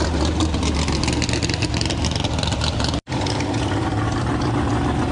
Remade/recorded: remade